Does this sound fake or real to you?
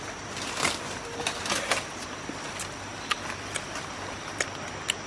real